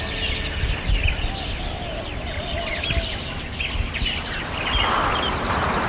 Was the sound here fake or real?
real